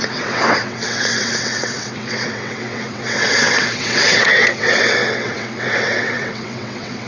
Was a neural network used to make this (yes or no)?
yes